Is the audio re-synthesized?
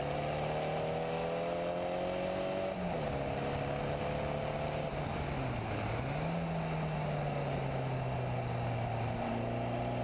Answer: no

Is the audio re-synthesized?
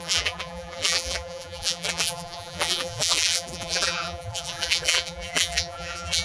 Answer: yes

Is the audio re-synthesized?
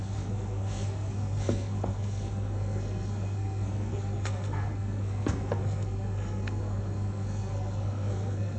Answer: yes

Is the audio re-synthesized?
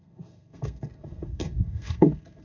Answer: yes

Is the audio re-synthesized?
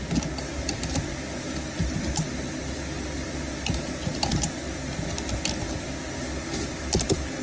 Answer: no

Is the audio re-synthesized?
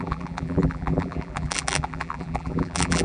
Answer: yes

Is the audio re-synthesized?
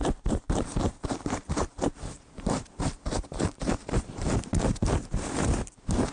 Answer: yes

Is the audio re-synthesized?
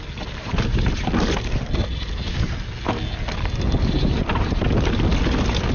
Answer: no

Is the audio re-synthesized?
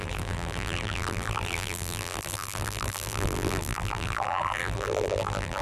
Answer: yes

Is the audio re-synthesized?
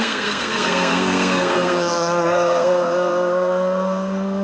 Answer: yes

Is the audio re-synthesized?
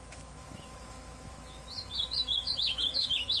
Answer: yes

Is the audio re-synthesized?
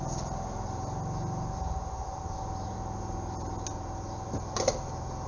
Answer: no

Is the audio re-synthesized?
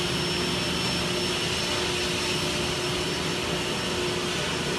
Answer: no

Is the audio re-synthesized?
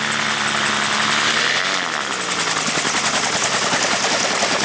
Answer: no